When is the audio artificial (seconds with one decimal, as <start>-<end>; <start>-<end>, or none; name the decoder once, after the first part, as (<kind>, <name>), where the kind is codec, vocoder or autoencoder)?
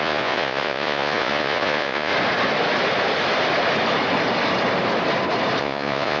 0.0-2.1 (vocoder, Vocos); 5.6-6.2